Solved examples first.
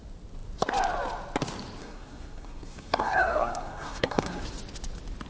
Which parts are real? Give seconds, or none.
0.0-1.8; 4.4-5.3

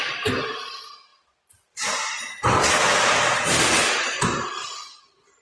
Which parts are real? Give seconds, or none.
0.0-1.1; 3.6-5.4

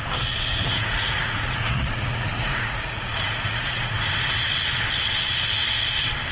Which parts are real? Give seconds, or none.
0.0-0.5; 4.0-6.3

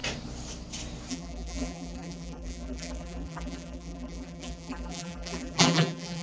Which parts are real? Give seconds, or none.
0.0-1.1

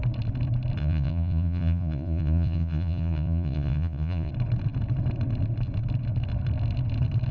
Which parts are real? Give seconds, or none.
0.0-0.8; 4.3-7.3